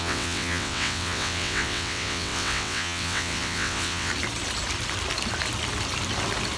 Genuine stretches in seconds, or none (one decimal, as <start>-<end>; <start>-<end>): 4.1-6.6